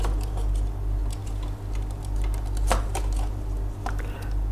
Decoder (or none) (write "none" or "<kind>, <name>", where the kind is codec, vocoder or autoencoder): none